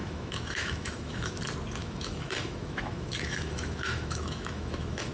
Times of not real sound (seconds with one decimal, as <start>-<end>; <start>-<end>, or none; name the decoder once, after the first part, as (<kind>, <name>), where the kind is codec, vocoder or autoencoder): 0.0-1.4 (autoencoder, DAC-VAE); 1.8-5.1